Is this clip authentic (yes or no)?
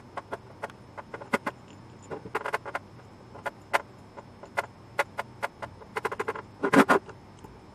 yes